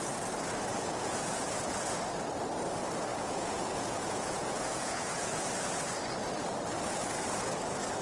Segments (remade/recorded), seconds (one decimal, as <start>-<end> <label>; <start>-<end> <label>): 0.0-0.7 recorded; 0.7-1.8 remade; 1.8-3.1 recorded; 3.1-5.4 remade; 5.4-8.0 recorded